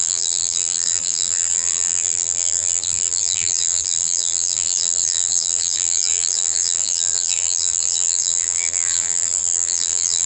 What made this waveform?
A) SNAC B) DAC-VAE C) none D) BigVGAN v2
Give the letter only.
D